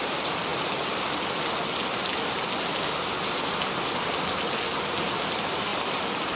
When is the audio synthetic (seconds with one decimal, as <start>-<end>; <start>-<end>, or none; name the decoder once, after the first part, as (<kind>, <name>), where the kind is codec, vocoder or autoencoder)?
none